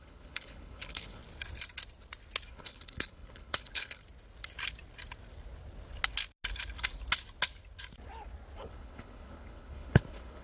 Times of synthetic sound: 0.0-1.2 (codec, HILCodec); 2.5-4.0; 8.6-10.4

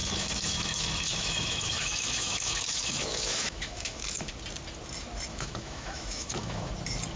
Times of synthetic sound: 0.0-4.3 (autoencoder, DAC-VAE); 5.3-6.7

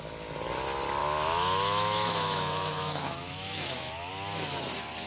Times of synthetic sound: 1.0-4.1 (autoencoder, DAC-VAE)

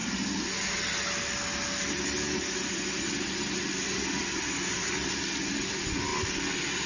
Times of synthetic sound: none

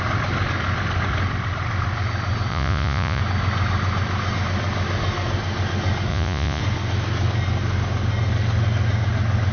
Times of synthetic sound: 2.5-3.2 (vocoder, Vocos); 6.1-6.6

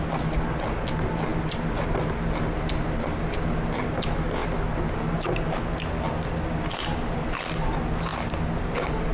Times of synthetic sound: none

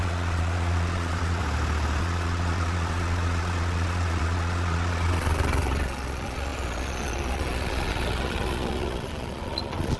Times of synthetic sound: 0.0-1.4 (vocoder, Vocos); 2.0-10.0

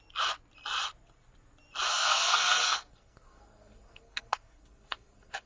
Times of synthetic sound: 1.9-5.5 (codec, SNAC)